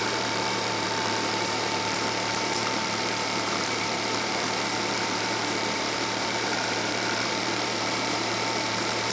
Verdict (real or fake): fake